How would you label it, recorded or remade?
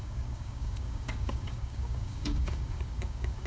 remade